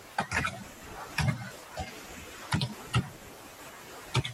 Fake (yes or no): yes